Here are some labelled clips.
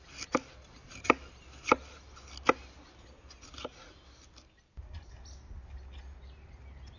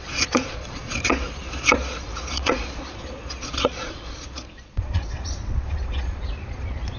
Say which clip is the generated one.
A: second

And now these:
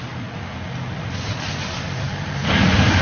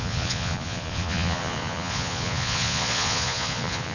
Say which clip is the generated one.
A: second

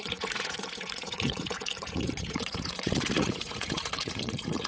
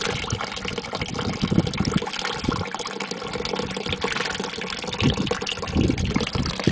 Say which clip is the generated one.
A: first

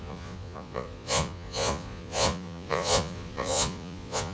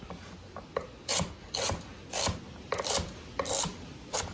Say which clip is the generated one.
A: first